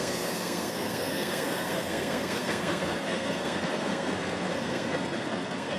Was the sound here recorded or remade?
remade